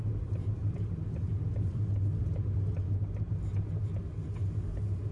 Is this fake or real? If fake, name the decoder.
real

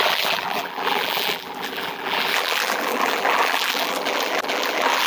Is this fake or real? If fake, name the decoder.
fake, vocoder, BigVGAN v2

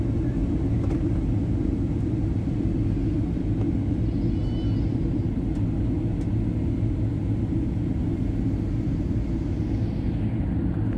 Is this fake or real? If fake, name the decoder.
real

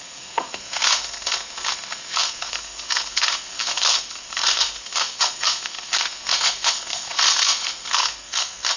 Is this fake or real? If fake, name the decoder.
fake, codec, SNAC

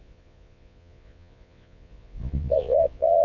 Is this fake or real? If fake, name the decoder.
fake, vocoder, Vocos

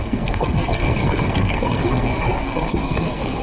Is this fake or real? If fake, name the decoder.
fake, codec, SNAC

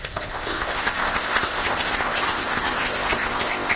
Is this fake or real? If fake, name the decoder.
fake, codec, ZipCodec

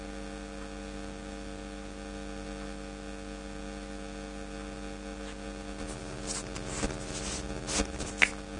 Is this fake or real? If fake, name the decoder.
real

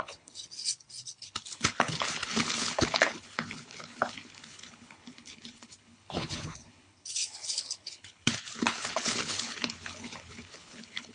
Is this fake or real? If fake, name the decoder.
fake, codec, HILCodec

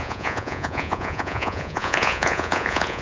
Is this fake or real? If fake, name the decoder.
fake, vocoder, Vocos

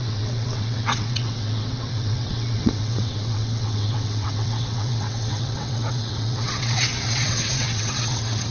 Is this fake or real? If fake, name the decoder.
fake, vocoder, WaveNeXt